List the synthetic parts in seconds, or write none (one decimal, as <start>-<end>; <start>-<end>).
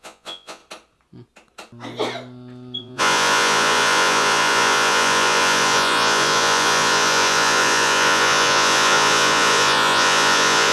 0.0-0.6; 2.8-10.7